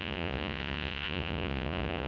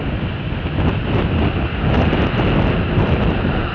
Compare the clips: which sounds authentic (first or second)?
second